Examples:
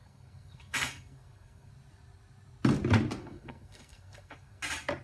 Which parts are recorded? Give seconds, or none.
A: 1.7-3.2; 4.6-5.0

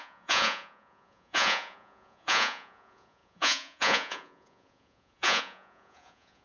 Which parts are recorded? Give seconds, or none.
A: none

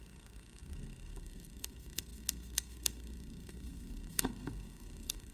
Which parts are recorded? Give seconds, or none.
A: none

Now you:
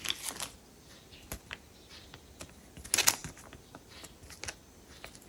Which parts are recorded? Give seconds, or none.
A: 0.0-5.3

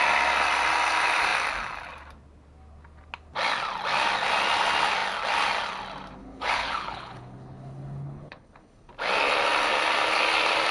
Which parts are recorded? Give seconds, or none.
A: 0.0-6.2; 8.9-10.7

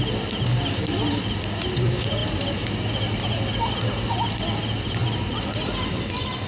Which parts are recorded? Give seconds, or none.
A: 0.0-6.5